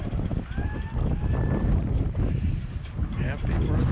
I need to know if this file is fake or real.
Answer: real